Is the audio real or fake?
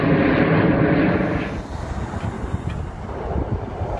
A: real